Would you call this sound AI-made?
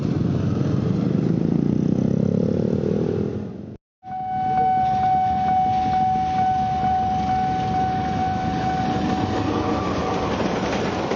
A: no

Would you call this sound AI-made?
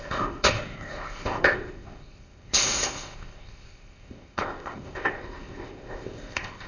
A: yes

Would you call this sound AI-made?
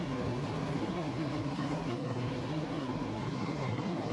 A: yes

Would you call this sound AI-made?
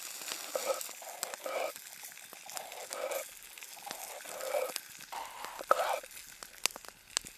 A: no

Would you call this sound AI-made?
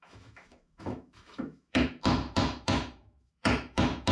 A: yes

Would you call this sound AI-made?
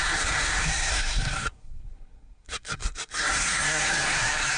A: yes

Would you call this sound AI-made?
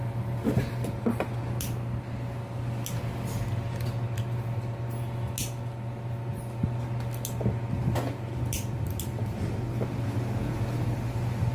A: no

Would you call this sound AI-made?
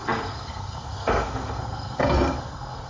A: yes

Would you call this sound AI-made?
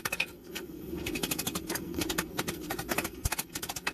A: yes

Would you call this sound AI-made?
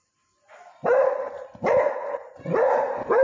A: yes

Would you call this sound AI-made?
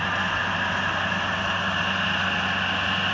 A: no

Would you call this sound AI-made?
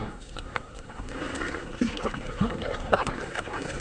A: yes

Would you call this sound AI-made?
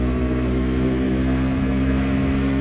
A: yes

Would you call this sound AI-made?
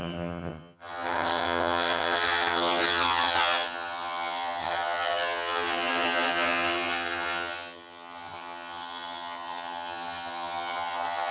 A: yes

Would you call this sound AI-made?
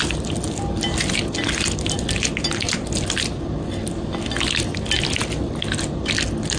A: no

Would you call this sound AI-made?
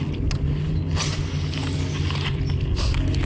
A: no